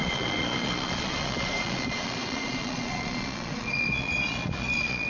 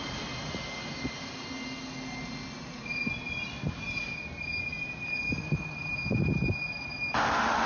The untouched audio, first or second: second